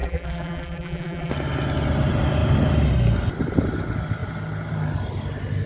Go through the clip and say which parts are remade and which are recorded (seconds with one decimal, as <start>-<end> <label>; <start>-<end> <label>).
0.0-1.3 remade; 1.3-5.7 recorded